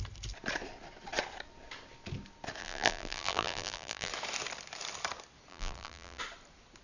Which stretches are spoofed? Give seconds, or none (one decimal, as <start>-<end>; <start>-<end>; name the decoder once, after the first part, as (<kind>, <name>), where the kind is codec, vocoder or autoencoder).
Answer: 2.6-4.1 (vocoder, BigVGAN v2); 5.5-6.2